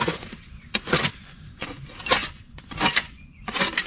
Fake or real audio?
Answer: fake